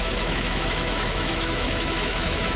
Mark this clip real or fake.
fake